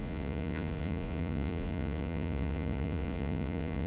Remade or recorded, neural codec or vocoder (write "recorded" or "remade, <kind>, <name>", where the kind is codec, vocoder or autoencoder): remade, vocoder, Vocos